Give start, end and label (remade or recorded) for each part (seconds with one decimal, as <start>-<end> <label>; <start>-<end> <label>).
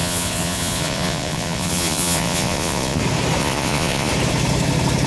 0.0-3.0 remade; 3.0-3.4 recorded; 3.4-4.1 remade; 4.1-5.1 recorded